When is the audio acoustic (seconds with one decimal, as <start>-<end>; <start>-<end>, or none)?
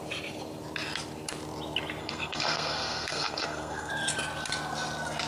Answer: 0.0-2.0; 3.9-5.3